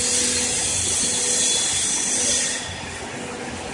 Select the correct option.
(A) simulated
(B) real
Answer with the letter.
B